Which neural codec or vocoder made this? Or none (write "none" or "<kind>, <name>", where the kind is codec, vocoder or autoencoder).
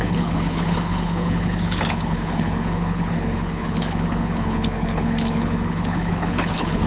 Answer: codec, HILCodec